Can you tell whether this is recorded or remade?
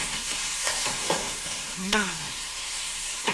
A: remade